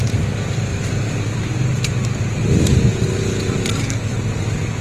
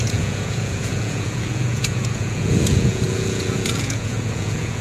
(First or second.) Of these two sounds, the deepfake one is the second